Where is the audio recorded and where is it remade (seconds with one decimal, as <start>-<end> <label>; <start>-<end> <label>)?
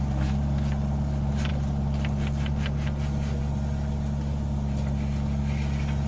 0.0-6.1 recorded